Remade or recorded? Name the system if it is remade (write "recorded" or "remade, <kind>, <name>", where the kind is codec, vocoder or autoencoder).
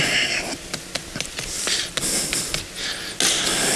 recorded